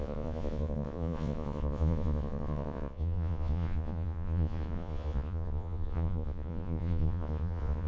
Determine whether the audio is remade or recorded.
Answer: remade